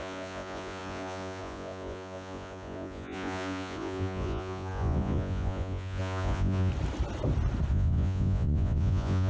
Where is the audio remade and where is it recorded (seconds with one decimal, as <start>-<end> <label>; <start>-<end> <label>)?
0.0-6.7 remade; 6.7-7.7 recorded; 7.7-9.3 remade

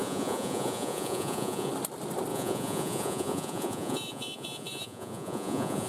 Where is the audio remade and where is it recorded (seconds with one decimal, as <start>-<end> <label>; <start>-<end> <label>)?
0.0-1.7 remade; 1.7-2.3 recorded; 2.3-5.9 remade

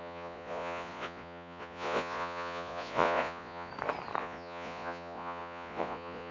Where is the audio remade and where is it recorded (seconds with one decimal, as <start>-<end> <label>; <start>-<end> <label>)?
0.0-3.7 remade; 3.7-4.2 recorded; 4.2-6.3 remade